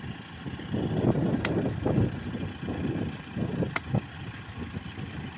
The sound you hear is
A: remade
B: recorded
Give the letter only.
B